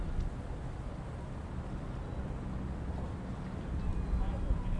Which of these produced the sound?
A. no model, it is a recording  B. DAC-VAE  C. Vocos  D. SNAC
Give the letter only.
A